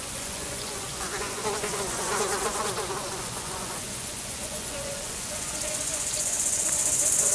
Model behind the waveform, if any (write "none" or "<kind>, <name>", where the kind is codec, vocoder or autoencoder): vocoder, Vocos